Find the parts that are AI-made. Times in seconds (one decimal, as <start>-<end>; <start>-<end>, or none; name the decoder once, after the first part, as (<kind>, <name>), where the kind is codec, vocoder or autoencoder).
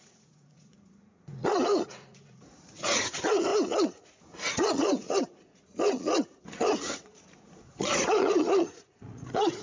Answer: 0.0-9.6 (vocoder, Vocos)